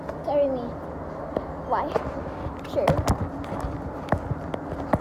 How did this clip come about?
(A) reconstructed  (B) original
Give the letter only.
B